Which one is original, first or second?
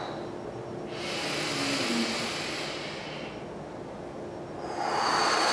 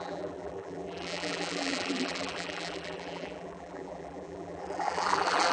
first